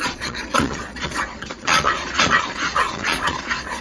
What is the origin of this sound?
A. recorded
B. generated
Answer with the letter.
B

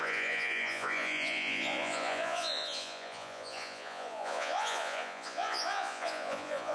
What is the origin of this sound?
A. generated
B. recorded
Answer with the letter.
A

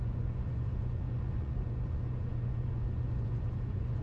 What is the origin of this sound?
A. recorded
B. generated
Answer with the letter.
B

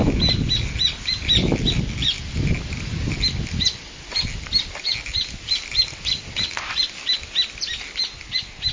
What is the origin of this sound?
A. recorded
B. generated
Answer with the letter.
A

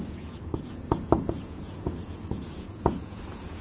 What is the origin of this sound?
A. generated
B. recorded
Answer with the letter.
A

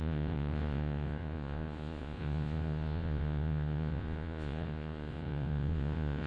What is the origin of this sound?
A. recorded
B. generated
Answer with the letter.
B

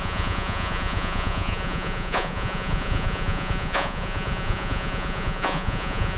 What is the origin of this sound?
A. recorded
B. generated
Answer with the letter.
B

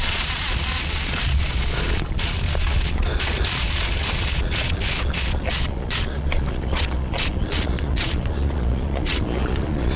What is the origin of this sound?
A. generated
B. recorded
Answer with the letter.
A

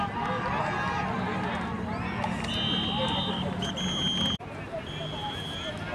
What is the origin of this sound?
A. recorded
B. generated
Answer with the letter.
A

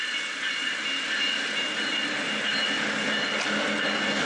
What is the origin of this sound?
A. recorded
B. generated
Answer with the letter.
A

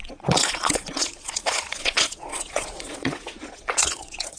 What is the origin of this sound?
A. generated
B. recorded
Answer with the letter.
A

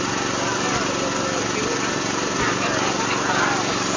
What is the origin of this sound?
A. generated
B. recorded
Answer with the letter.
B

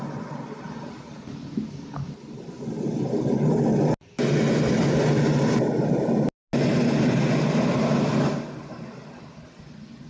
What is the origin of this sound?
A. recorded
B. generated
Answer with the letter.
A